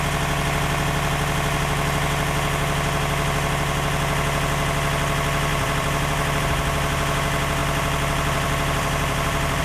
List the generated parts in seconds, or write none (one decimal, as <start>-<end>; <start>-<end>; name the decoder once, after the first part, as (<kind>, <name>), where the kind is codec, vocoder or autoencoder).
5.5-6.4 (vocoder, BigVGAN v2); 7.6-9.6